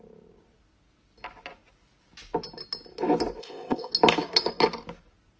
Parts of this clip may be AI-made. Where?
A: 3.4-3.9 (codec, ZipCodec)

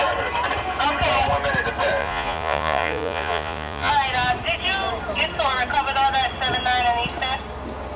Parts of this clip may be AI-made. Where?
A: 2.0-3.9 (vocoder, Vocos)